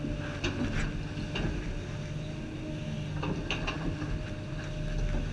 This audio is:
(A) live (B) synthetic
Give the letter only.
A